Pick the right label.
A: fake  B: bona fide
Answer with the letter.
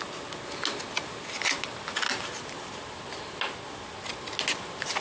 B